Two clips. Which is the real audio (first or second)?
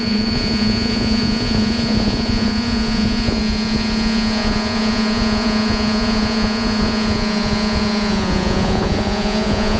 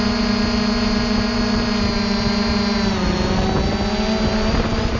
second